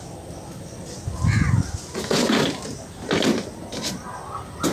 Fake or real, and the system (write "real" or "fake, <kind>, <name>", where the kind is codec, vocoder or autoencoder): real